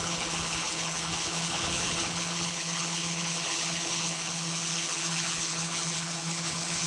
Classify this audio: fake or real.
fake